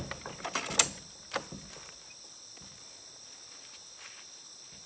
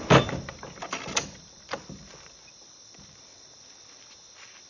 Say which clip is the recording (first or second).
first